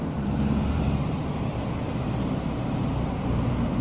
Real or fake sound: fake